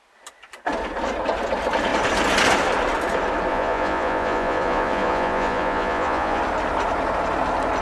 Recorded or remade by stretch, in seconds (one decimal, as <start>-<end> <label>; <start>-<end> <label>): 0.0-3.5 recorded; 3.5-6.4 remade; 6.4-7.8 recorded